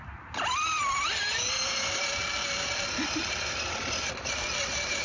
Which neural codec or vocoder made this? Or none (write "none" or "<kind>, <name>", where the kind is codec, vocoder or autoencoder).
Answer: none